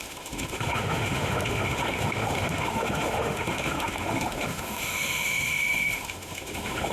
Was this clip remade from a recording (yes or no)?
yes